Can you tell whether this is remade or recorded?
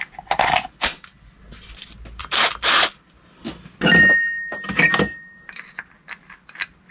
recorded